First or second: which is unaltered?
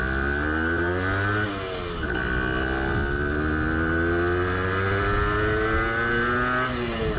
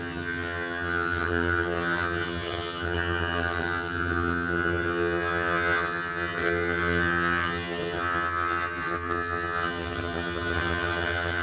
first